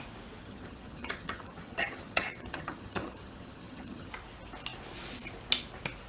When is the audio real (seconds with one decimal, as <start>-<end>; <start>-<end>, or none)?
0.0-0.4; 4.1-6.1